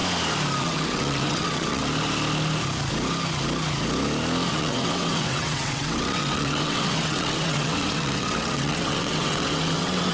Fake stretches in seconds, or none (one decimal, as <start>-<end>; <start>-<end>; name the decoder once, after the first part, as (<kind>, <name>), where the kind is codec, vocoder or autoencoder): 0.6-1.8 (vocoder, WaveNeXt); 4.5-10.1

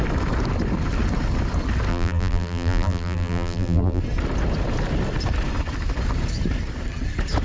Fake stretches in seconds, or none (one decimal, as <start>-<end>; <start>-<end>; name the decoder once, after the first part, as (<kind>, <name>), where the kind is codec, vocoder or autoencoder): 1.9-4.0 (vocoder, BigVGAN v2)